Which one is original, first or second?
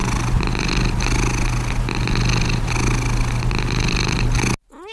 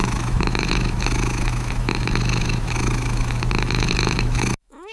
first